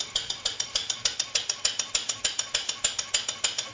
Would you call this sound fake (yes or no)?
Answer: no